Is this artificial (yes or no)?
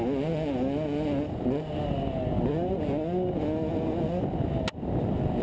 no